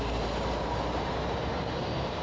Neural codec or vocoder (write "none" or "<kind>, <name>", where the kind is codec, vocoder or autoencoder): none